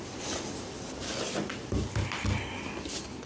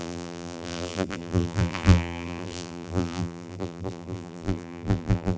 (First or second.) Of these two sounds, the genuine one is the first